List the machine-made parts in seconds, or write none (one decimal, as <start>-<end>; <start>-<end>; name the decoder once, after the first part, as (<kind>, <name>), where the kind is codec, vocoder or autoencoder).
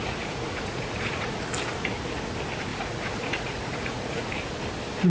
0.0-1.4 (vocoder, Vocos); 2.7-4.3